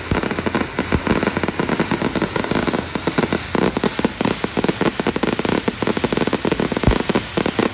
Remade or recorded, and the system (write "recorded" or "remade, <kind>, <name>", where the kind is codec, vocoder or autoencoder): recorded